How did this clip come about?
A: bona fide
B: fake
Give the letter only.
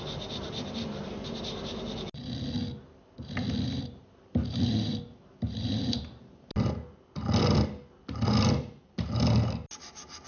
A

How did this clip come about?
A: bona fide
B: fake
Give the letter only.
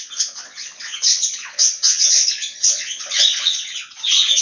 B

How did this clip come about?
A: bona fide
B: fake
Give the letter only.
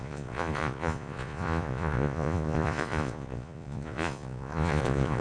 B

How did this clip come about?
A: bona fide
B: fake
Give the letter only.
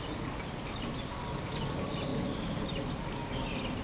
A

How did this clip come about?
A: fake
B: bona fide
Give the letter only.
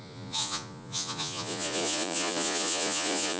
A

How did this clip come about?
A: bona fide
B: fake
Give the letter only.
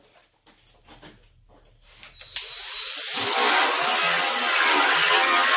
A